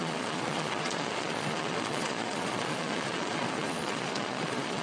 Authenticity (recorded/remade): remade